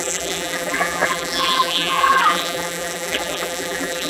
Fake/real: fake